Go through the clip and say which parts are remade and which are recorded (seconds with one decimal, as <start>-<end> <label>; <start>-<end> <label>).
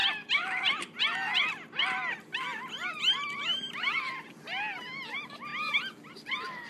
0.0-5.5 remade; 5.5-6.1 recorded; 6.1-6.7 remade